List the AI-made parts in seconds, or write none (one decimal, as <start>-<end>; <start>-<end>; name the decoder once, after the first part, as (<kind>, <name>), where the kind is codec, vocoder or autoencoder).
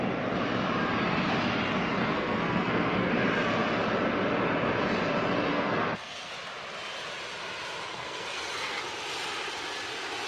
2.0-3.1 (codec, SNAC); 5.5-6.3; 7.8-8.8